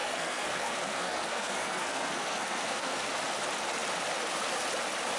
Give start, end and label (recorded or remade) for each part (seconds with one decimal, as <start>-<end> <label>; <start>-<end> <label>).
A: 0.0-3.1 remade; 3.1-5.2 recorded